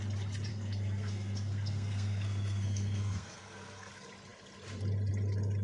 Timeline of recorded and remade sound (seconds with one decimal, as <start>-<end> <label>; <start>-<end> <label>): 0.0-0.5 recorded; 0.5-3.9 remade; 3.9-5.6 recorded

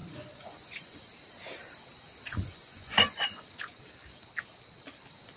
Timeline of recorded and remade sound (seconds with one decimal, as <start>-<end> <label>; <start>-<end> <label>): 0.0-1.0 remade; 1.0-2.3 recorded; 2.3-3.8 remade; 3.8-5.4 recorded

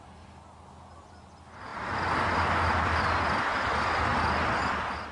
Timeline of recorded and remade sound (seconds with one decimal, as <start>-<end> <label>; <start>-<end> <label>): 0.0-5.1 recorded

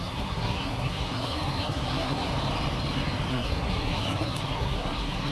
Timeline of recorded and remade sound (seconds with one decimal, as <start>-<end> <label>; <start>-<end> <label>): 0.0-2.3 remade; 2.3-3.3 recorded; 3.3-5.3 remade

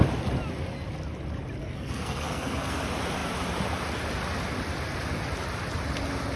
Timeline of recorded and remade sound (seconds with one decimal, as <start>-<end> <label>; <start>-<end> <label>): 0.0-1.6 recorded; 1.6-2.8 remade; 2.8-6.4 recorded

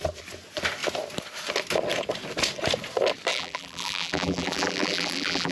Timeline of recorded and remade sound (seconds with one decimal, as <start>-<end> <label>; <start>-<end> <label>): 0.0-3.3 recorded; 3.3-5.5 remade